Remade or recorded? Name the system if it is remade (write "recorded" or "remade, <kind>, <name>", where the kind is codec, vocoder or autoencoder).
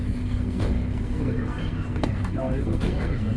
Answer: remade, codec, SNAC